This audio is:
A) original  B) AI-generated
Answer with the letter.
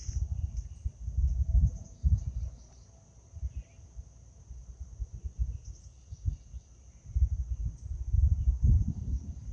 A